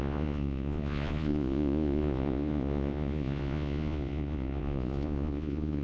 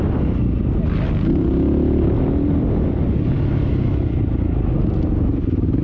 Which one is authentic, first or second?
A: second